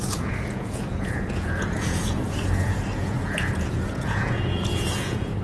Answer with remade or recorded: remade